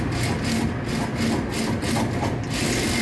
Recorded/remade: recorded